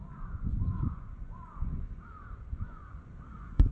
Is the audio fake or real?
fake